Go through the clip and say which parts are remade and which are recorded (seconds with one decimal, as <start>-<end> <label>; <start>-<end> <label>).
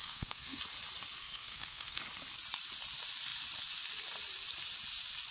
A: 0.0-0.6 remade; 0.6-1.2 recorded; 1.2-2.0 remade; 2.0-5.3 recorded